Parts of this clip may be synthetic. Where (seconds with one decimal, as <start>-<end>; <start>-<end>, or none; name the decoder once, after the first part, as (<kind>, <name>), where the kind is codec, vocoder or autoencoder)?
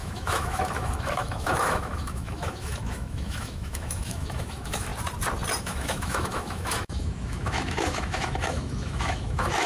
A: 0.0-4.9 (autoencoder, DAC-VAE); 5.6-9.7